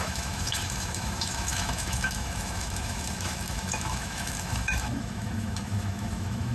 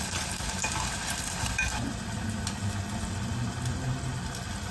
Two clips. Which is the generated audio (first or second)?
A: first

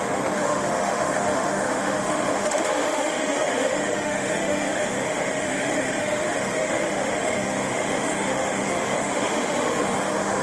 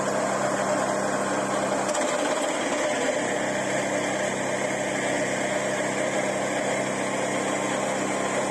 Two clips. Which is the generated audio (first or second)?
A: first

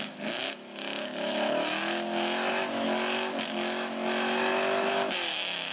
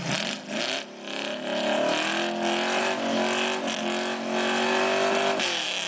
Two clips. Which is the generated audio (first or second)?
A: first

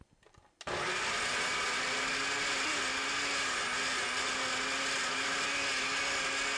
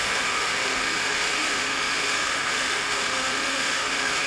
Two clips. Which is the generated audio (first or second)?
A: second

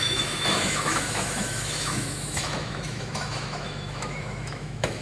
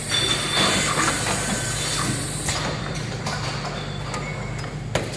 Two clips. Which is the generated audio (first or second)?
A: first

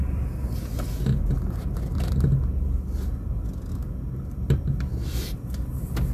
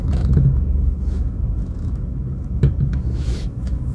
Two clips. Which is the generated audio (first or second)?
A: second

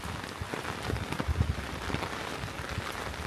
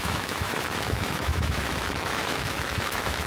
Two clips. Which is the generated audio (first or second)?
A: second